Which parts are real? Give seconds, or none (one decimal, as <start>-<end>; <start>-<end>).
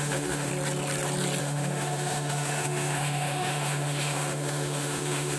0.5-1.4